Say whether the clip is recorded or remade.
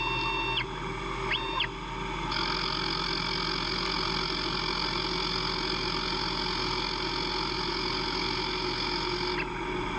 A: recorded